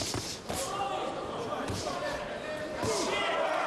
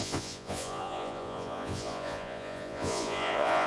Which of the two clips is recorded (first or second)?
first